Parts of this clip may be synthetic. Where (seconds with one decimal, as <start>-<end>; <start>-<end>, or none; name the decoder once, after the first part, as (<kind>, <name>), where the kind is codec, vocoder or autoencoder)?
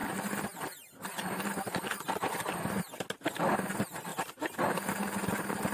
none